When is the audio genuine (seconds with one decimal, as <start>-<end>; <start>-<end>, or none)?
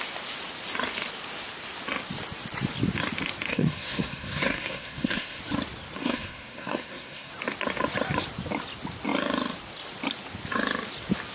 0.0-3.5; 5.4-6.0; 7.3-11.3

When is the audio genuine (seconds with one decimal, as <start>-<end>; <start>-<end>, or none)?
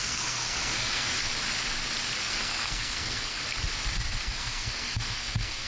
1.3-2.2; 3.4-4.2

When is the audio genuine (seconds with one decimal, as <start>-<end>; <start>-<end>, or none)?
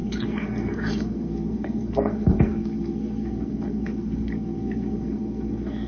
none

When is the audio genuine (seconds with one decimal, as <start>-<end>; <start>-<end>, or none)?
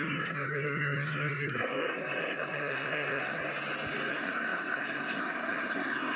3.4-4.1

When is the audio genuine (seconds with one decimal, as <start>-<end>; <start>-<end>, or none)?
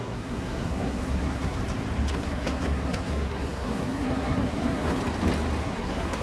1.6-2.1; 5.0-5.6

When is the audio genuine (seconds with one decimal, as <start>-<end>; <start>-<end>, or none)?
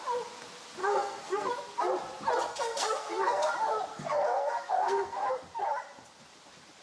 0.0-0.8; 1.5-2.5; 3.5-3.9; 5.3-6.8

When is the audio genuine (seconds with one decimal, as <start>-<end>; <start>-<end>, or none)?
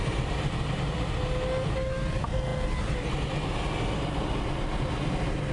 0.0-5.5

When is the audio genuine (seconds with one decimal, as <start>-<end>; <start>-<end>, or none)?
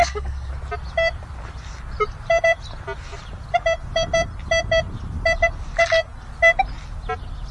0.5-7.5